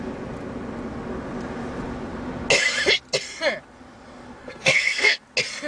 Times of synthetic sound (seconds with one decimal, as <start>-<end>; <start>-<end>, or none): 4.4-5.2